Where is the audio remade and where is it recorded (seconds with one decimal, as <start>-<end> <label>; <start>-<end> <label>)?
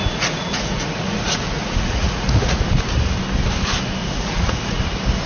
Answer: 0.0-2.6 remade; 2.6-4.0 recorded; 4.0-4.8 remade; 4.8-5.3 recorded